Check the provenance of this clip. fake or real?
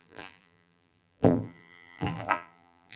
fake